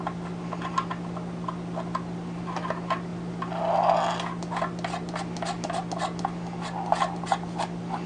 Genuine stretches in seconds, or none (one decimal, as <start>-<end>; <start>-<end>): 0.0-8.1